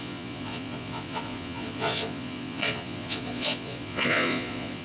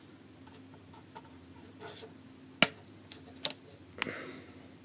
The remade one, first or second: first